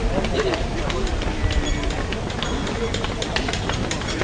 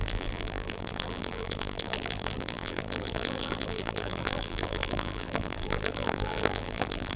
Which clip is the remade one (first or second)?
second